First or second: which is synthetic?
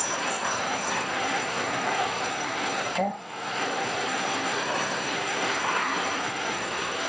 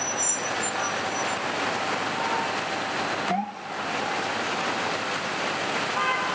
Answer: first